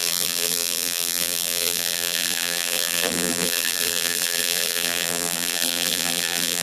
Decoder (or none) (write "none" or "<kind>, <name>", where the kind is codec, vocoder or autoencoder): vocoder, BigVGAN v2